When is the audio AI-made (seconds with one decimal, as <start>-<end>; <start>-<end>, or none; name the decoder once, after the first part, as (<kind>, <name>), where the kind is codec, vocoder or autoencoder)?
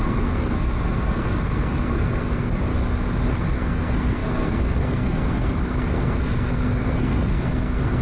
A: 0.0-2.7 (codec, SNAC); 3.4-8.0